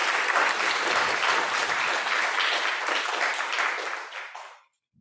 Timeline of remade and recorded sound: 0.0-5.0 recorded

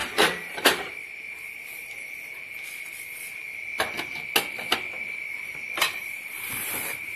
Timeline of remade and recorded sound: 0.0-1.2 remade; 1.2-5.0 recorded; 5.0-7.2 remade

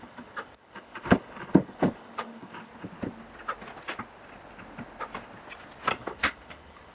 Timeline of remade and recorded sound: 0.0-2.7 remade; 2.7-5.9 recorded; 5.9-6.9 remade

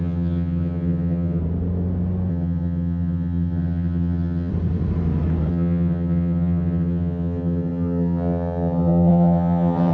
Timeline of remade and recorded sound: 0.0-1.4 remade; 1.4-2.3 recorded; 2.3-4.5 remade; 4.5-5.5 recorded; 5.5-9.9 remade